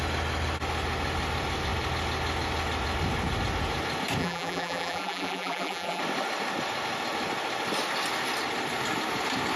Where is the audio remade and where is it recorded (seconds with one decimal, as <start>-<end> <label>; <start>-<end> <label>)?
0.0-4.2 recorded; 4.2-6.0 remade; 6.0-9.6 recorded